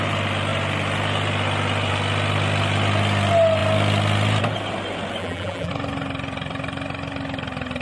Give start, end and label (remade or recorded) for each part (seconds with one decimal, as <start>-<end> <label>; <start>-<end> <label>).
0.0-5.2 recorded; 5.2-5.7 remade; 5.7-7.8 recorded